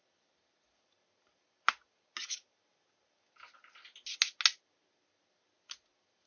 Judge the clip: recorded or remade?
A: recorded